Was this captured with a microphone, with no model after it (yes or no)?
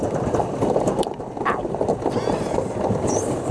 no